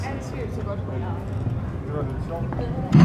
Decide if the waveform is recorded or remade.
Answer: recorded